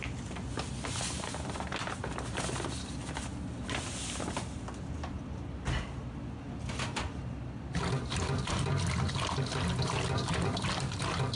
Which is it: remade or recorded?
recorded